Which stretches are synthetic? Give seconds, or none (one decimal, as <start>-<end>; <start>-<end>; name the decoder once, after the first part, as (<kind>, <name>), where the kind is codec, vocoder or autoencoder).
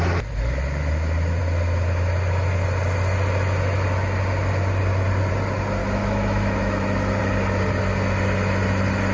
5.8-7.2 (autoencoder, DAC-VAE)